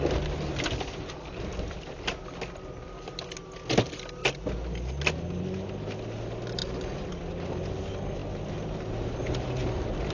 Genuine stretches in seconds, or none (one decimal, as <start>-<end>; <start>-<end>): 0.0-10.1